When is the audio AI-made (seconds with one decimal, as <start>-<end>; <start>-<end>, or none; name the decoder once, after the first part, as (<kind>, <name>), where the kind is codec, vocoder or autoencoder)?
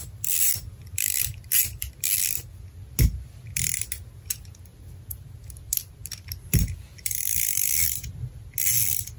0.0-2.2 (vocoder, BigVGAN v2); 6.0-8.1